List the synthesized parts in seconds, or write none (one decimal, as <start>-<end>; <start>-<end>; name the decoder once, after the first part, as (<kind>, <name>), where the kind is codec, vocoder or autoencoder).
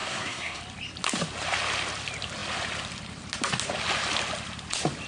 0.0-0.6 (codec, SNAC)